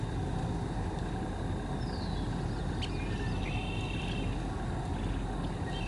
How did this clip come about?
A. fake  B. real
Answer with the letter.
B